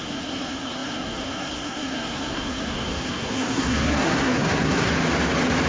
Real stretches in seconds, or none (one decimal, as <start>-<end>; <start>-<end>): 4.9-5.7